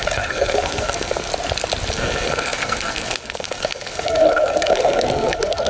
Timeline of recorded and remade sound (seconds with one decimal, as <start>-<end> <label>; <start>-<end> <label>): 0.0-1.3 remade; 1.3-1.9 recorded; 1.9-5.7 remade